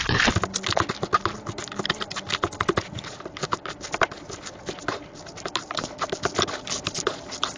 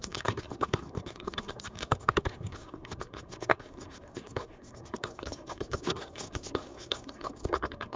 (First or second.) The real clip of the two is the first